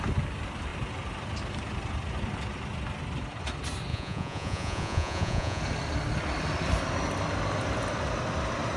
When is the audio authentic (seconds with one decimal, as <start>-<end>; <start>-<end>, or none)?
0.0-3.9; 5.6-8.8

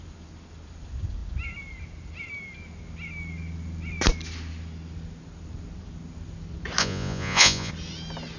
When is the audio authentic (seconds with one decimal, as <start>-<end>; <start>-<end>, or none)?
0.0-6.8; 7.7-8.4

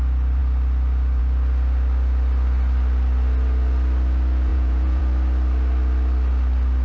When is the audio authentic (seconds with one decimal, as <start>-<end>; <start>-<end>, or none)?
0.0-4.5; 5.0-6.8